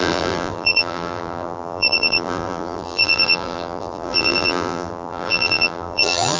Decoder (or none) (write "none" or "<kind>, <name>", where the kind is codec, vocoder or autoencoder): vocoder, BigVGAN v2